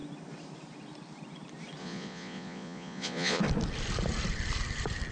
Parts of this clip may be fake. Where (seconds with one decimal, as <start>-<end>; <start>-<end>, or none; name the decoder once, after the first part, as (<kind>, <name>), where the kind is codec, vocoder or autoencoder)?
1.8-3.4 (vocoder, Vocos)